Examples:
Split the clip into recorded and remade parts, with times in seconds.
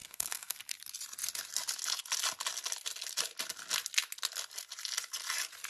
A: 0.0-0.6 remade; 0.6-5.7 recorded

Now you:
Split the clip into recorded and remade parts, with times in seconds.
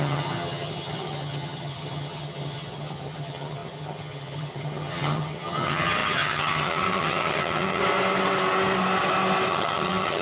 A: 0.0-7.8 remade; 7.8-9.5 recorded; 9.5-10.2 remade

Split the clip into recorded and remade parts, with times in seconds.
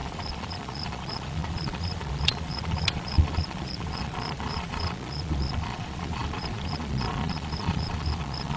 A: 0.0-8.6 remade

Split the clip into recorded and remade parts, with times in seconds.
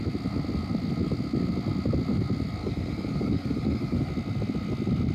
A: 0.0-2.6 recorded; 2.6-4.1 remade; 4.1-5.1 recorded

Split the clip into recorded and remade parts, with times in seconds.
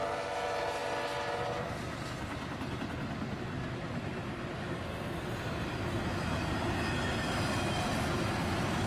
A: 0.0-8.9 recorded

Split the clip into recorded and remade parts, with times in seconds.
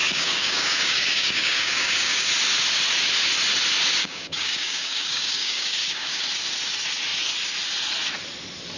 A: 0.0-2.3 remade; 2.3-4.0 recorded; 4.0-6.2 remade; 6.2-8.8 recorded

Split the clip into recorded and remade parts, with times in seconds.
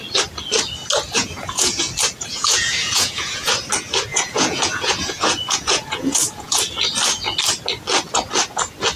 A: 0.0-1.2 recorded; 1.2-1.8 remade; 1.8-2.3 recorded; 2.3-3.5 remade; 3.5-4.1 recorded; 4.1-6.6 remade; 6.6-9.0 recorded